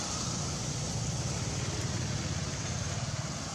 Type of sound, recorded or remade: recorded